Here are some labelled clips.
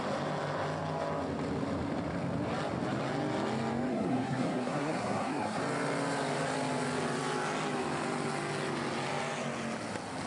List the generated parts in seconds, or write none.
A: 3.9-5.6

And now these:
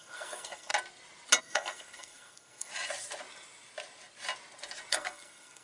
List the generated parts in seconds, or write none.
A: 0.0-0.7; 1.4-2.7; 4.9-5.6

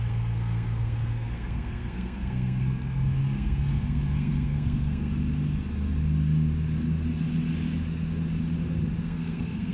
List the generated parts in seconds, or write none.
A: 0.0-5.1; 9.0-9.7